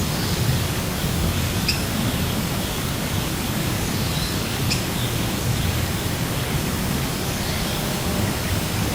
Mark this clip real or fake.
fake